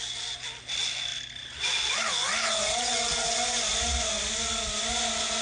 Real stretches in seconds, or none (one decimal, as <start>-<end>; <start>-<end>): 0.0-5.4